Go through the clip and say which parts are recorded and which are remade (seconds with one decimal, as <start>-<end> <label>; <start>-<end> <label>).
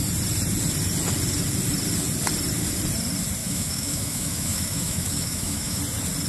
0.0-3.4 recorded; 3.4-5.8 remade; 5.8-6.3 recorded